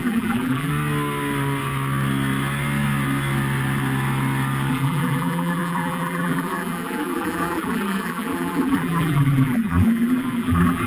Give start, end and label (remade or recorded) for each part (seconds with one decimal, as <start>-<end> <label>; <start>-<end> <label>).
0.0-0.7 remade; 0.7-4.7 recorded; 4.7-10.9 remade